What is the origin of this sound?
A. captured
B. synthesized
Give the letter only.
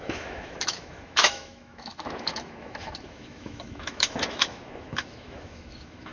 B